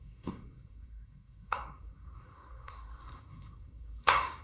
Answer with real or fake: fake